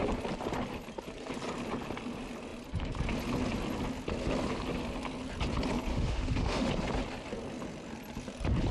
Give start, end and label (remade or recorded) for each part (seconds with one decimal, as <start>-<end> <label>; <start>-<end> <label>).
0.0-5.9 recorded; 5.9-6.7 remade; 6.7-8.7 recorded